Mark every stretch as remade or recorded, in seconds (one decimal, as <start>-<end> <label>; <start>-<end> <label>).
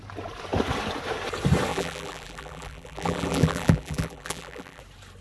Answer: 0.0-1.7 recorded; 1.7-4.8 remade; 4.8-5.2 recorded